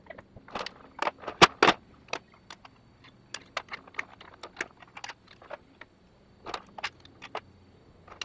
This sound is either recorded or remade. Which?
recorded